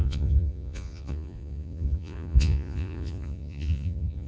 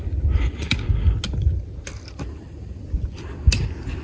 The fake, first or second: first